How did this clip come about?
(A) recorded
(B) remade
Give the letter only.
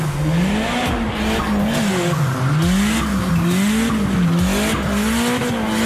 A